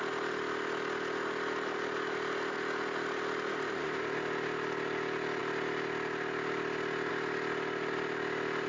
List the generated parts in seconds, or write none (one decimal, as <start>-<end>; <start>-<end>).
none